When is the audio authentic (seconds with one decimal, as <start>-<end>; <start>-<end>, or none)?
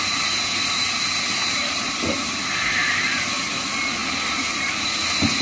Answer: 0.0-1.4; 1.9-5.4